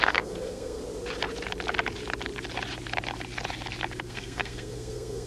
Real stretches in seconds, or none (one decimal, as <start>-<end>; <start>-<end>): 0.8-4.0